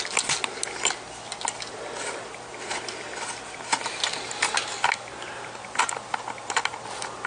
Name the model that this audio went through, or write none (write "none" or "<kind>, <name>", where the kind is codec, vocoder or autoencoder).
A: none